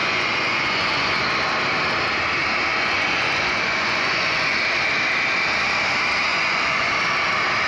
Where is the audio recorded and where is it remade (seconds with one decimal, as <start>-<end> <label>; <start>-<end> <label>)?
0.0-1.2 remade; 1.2-2.7 recorded; 2.7-4.6 remade; 4.6-6.3 recorded; 6.3-6.9 remade; 6.9-7.7 recorded